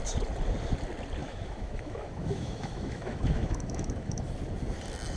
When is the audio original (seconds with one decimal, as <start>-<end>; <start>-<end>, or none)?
0.0-1.2; 4.3-5.2